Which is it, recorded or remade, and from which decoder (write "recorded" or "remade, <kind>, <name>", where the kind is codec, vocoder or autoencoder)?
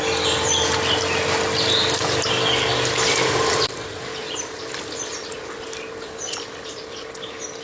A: recorded